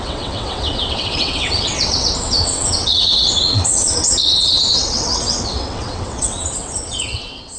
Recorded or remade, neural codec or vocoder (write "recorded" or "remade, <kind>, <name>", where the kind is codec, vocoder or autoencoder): remade, vocoder, WaveNeXt